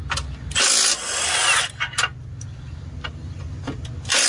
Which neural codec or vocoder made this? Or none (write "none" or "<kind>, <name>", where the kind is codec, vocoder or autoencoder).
none